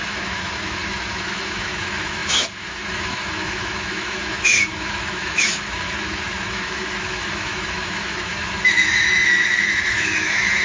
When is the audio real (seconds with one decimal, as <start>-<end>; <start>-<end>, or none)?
none